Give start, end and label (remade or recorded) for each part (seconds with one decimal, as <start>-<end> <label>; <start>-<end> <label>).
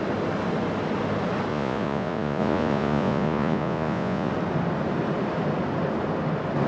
0.0-1.5 recorded; 1.5-4.3 remade; 4.3-6.7 recorded